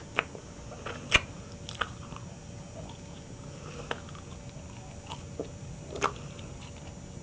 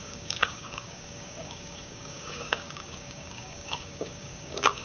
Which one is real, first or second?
first